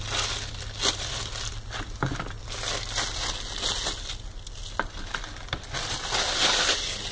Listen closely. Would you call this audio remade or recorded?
recorded